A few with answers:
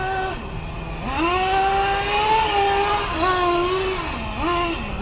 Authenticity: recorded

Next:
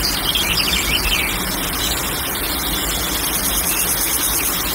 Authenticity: recorded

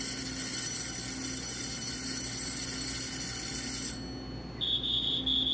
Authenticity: recorded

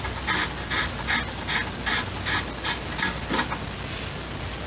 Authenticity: recorded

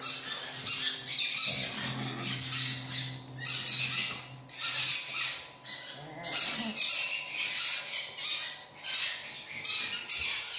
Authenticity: recorded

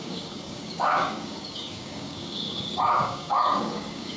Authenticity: remade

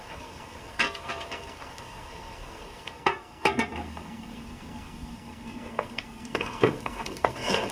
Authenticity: remade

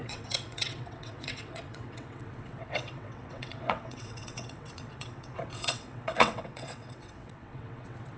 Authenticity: remade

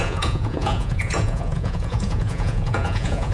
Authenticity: remade